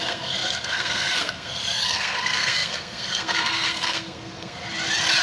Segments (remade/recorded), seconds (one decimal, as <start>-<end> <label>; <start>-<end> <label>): 0.0-4.6 remade; 4.6-5.2 recorded